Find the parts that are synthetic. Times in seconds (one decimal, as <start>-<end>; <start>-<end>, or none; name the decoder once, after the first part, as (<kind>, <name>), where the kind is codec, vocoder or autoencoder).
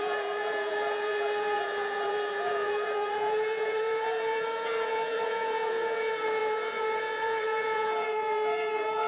0.0-9.1 (vocoder, Vocos)